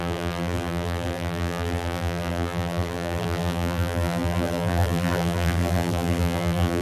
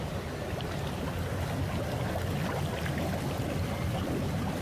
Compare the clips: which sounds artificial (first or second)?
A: first